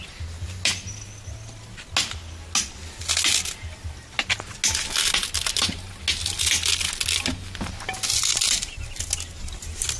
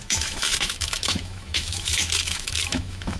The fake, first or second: second